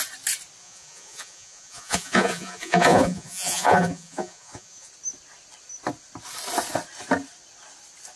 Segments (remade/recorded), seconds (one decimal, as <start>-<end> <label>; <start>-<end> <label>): 0.0-0.6 recorded; 0.6-4.9 remade; 4.9-8.2 recorded